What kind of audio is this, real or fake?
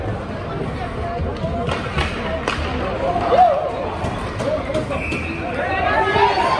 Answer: real